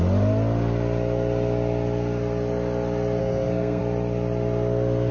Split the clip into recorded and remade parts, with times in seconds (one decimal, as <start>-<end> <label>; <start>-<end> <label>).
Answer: 0.0-3.2 recorded; 3.2-3.8 remade; 3.8-5.1 recorded